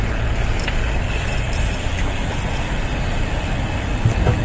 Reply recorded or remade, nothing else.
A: recorded